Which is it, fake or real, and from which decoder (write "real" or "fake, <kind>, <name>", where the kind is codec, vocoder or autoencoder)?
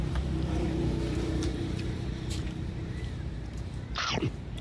fake, vocoder, BigVGAN v2